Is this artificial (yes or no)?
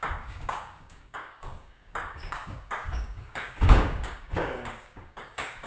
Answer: yes